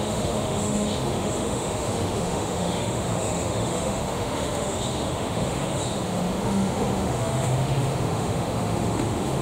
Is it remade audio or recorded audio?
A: remade